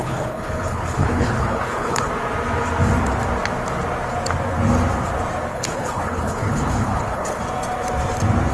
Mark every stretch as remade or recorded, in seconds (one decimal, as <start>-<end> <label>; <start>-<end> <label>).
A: 0.0-2.1 remade; 2.1-5.5 recorded; 5.5-7.4 remade; 7.4-8.5 recorded